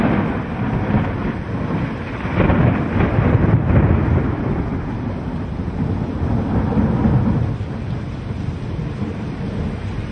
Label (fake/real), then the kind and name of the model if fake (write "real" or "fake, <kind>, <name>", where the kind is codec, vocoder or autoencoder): real